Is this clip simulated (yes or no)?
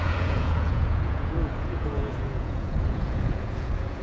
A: yes